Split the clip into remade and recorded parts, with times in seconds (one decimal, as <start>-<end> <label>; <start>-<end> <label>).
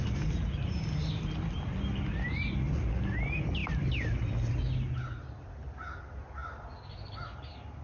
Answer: 0.0-7.8 recorded